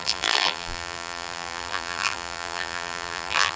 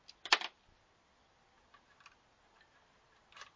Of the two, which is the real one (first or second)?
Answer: second